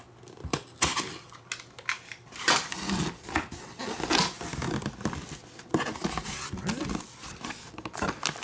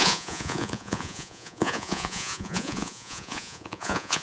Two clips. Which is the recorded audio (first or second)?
first